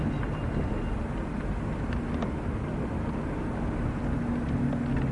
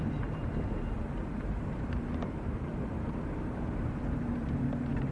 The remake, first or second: second